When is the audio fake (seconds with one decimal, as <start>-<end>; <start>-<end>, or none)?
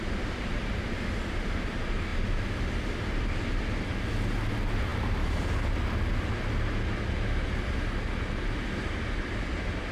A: none